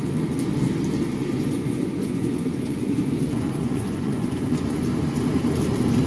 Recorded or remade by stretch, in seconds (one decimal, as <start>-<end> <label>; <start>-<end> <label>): 0.0-1.1 recorded; 1.1-4.8 remade; 4.8-6.1 recorded